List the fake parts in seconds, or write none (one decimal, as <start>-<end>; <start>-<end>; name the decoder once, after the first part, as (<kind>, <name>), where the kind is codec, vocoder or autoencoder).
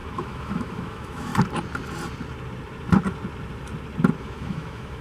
0.0-1.3 (autoencoder, DAC-VAE); 4.2-5.0